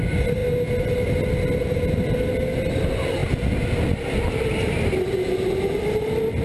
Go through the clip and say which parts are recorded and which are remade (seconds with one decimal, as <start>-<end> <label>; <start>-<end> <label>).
0.0-6.4 recorded